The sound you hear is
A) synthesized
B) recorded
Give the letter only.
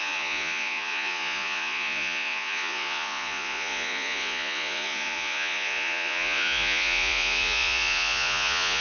A